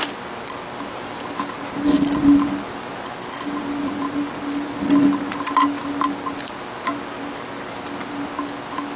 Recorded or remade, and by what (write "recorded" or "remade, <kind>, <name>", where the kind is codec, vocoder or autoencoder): recorded